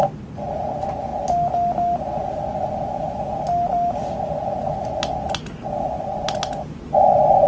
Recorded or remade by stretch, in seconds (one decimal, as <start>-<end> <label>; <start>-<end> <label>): 0.0-7.5 recorded